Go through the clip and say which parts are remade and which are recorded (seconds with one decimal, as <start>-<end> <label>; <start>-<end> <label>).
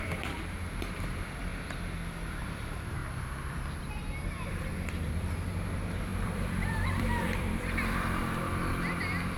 0.0-1.5 remade; 1.5-2.4 recorded; 2.4-3.0 remade; 3.0-4.7 recorded; 4.7-9.4 remade